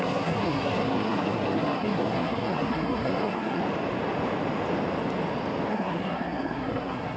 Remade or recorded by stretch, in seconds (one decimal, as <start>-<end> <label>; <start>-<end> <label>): 0.0-3.6 remade; 3.6-5.7 recorded; 5.7-7.2 remade